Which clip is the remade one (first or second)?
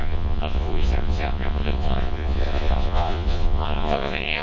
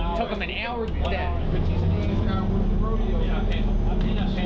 first